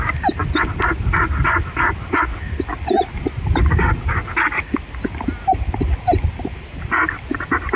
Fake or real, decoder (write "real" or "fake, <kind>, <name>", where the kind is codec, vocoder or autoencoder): real